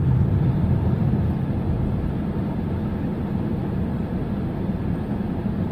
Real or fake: fake